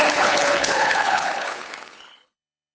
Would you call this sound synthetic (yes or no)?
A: yes